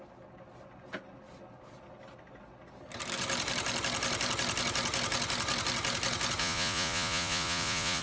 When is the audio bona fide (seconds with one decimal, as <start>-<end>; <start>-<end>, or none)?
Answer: 0.0-6.4